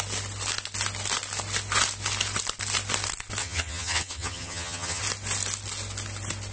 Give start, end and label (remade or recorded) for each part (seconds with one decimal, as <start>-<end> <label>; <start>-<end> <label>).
0.0-3.4 recorded; 3.4-5.0 remade; 5.0-6.5 recorded